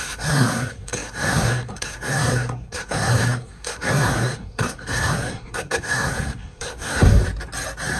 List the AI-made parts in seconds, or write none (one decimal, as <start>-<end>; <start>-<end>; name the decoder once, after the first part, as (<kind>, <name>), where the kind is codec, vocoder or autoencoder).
0.0-7.2 (codec, SNAC)

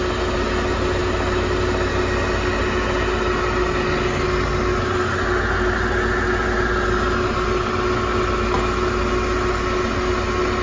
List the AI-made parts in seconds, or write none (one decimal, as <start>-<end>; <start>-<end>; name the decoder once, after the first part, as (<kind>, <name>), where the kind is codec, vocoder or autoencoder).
none